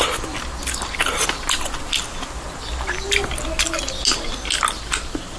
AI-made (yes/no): no